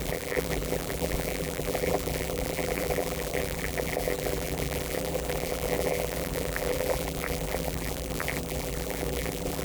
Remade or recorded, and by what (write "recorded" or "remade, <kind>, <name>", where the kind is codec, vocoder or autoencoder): remade, vocoder, BigVGAN v2